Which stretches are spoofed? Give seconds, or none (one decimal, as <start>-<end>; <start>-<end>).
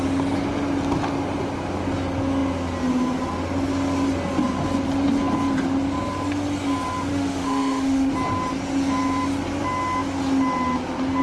7.1-8.1